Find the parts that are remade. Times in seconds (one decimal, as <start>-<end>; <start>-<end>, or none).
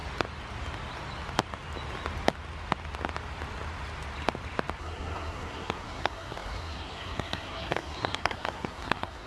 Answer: 4.8-9.3